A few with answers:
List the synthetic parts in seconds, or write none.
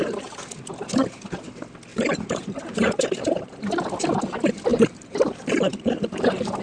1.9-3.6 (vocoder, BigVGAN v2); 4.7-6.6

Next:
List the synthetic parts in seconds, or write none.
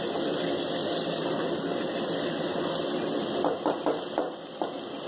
0.8-2.6 (vocoder, BigVGAN v2)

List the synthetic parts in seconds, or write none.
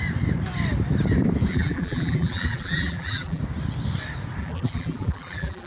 1.5-3.4 (vocoder, BigVGAN v2); 4.4-5.7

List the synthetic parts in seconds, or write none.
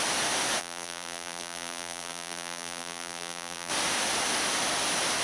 0.6-3.7 (vocoder, BigVGAN v2)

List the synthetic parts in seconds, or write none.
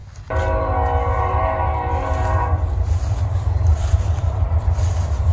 1.2-5.3 (vocoder, BigVGAN v2)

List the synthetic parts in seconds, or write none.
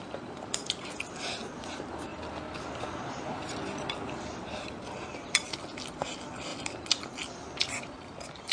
2.1-4.8 (vocoder, BigVGAN v2); 6.5-8.5